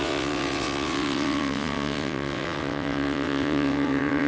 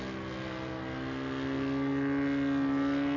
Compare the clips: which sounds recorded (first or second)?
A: second